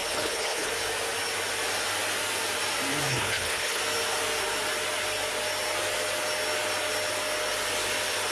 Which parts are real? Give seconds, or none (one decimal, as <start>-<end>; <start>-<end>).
0.7-3.1; 3.8-8.3